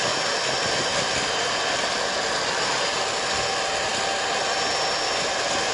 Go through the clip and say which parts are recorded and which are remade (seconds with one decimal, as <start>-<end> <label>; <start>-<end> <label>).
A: 0.0-0.9 recorded; 0.9-1.5 remade; 1.5-3.9 recorded; 3.9-4.5 remade; 4.5-5.7 recorded